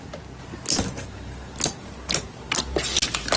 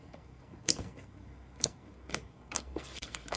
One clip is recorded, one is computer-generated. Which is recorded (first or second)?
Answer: first